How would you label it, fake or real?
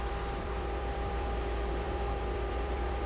fake